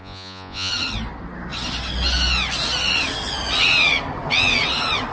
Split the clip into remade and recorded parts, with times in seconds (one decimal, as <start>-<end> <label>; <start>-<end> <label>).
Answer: 0.0-0.7 remade; 0.7-5.1 recorded